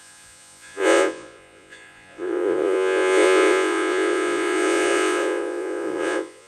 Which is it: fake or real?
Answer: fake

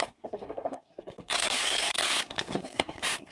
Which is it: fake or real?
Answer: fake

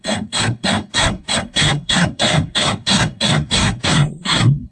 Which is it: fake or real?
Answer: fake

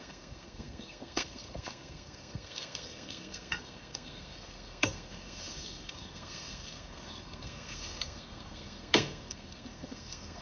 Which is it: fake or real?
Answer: fake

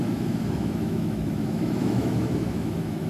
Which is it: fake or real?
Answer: fake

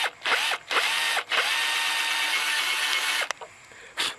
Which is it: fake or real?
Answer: real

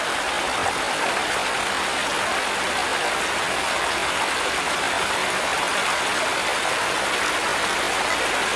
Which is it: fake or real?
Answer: real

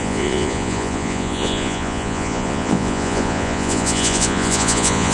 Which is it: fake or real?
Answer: fake